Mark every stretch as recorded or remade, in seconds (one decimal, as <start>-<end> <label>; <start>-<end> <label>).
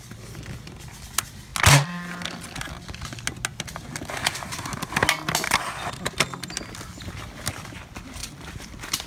0.0-8.2 recorded; 8.2-9.1 remade